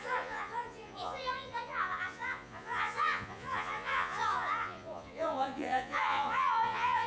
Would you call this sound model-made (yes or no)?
yes